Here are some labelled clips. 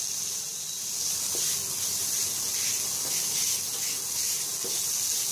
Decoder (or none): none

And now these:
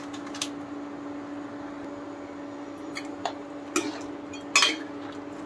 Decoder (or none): none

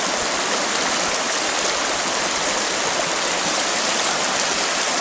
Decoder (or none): none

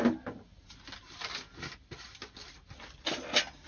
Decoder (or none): none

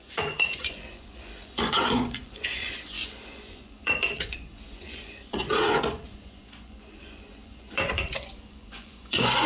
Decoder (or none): vocoder, Vocos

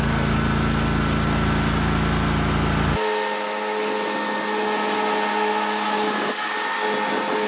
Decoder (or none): none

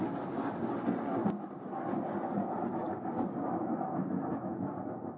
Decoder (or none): none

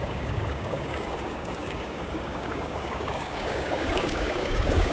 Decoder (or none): codec, DAC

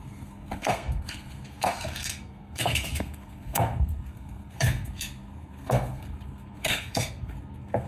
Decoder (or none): codec, SNAC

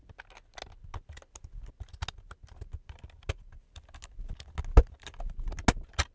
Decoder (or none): none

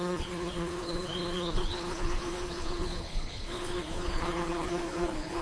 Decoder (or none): codec, HILCodec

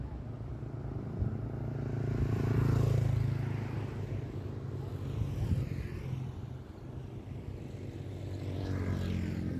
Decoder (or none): none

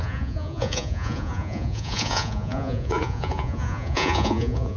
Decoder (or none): vocoder, Vocos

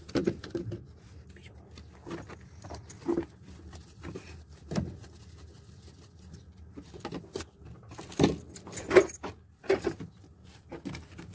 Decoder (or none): none